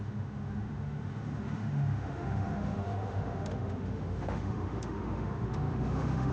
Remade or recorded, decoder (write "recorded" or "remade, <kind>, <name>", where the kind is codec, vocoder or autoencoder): remade, autoencoder, DAC-VAE